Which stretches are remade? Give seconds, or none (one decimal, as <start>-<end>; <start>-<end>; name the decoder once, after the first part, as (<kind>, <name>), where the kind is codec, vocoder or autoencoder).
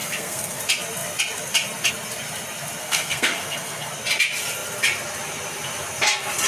0.0-0.6 (codec, SNAC); 2.8-3.9